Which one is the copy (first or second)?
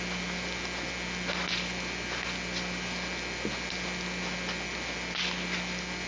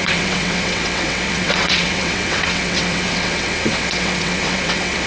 second